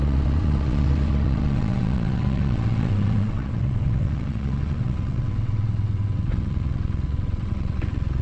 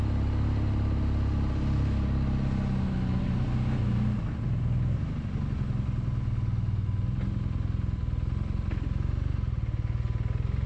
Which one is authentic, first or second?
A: second